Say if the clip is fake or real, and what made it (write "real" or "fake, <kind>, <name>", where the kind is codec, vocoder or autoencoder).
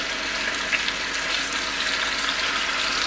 real